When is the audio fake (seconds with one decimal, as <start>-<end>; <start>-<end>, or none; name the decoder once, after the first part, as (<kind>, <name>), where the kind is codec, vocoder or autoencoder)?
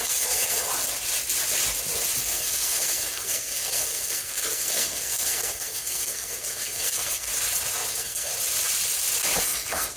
0.0-0.7 (codec, SNAC); 2.2-7.3; 7.9-8.3; 9.4-10.0